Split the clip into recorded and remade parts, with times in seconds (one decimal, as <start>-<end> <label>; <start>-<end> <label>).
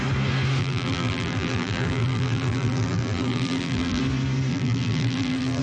0.0-0.6 recorded; 0.6-4.0 remade; 4.0-4.5 recorded; 4.5-5.6 remade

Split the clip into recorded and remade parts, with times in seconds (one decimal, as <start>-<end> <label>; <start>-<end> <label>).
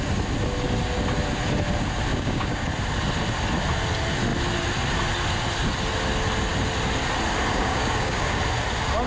0.0-2.1 recorded; 2.1-2.7 remade; 2.7-7.5 recorded; 7.5-8.4 remade; 8.4-9.1 recorded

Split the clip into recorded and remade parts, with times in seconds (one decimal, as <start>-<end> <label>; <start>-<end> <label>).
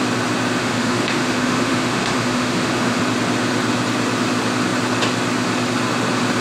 0.0-0.6 recorded; 0.6-3.0 remade; 3.0-6.4 recorded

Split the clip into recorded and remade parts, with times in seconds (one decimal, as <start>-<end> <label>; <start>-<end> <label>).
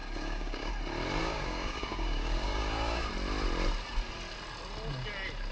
0.0-0.7 remade; 0.7-1.2 recorded; 1.2-3.1 remade; 3.1-5.5 recorded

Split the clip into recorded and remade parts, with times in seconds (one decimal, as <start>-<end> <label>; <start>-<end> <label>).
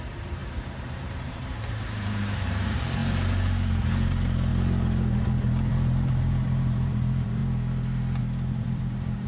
0.0-3.0 remade; 3.0-3.7 recorded; 3.7-4.5 remade; 4.5-5.7 recorded; 5.7-7.4 remade; 7.4-8.2 recorded; 8.2-9.3 remade